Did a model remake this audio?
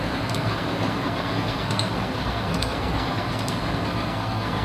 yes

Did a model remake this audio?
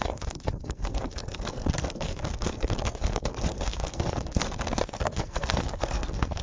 yes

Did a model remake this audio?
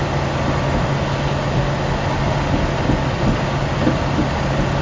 no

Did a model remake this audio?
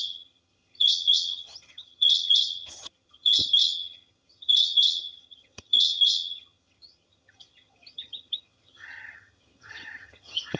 yes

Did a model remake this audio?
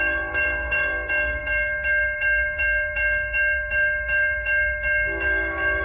yes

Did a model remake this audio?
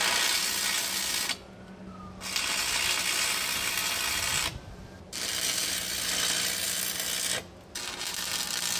no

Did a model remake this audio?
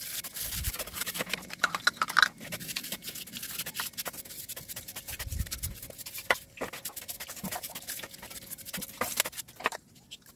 no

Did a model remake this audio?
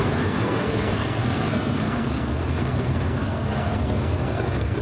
yes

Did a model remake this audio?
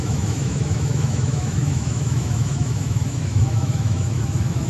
yes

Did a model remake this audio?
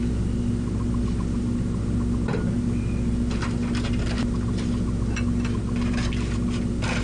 no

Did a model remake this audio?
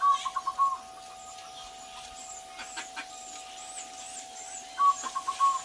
no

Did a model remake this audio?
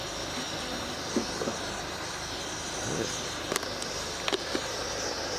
no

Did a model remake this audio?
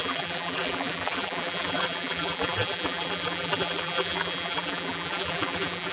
yes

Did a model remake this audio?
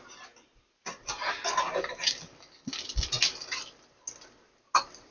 no